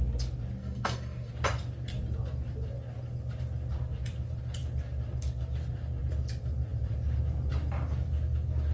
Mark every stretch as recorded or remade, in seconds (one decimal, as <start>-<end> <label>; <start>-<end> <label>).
0.0-0.6 recorded; 0.6-1.3 remade; 1.3-8.7 recorded